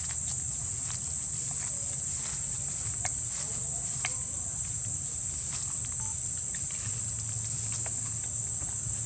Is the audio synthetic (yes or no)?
no